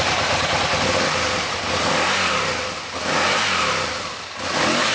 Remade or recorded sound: recorded